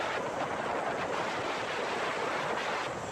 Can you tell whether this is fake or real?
real